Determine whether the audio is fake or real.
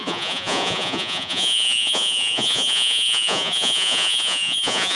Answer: fake